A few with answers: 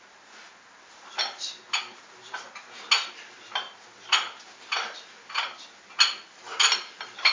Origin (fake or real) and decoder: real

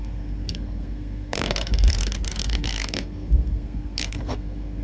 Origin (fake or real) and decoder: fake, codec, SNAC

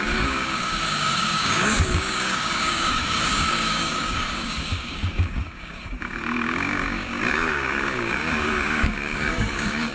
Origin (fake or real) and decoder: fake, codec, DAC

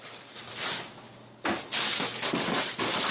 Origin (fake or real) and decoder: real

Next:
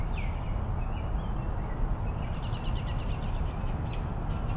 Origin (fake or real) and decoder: real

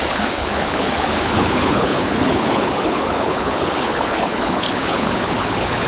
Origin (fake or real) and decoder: fake, codec, HILCodec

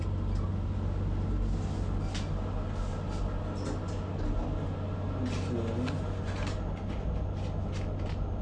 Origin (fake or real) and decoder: real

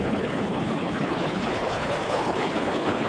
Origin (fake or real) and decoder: fake, codec, HILCodec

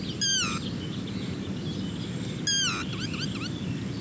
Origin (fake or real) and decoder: real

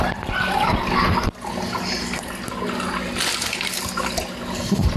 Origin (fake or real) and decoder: real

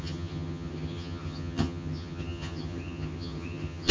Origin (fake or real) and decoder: fake, vocoder, HiFi-GAN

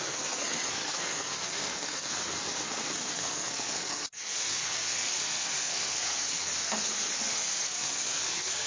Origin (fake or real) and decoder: fake, codec, SNAC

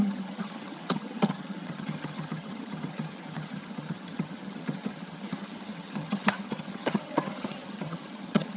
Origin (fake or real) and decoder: fake, vocoder, HiFi-GAN